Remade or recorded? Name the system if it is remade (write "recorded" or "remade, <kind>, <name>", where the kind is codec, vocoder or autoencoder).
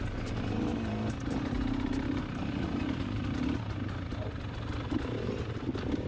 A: recorded